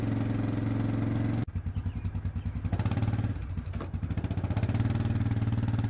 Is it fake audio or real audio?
real